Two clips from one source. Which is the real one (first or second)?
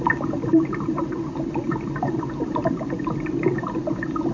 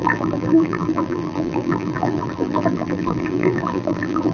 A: first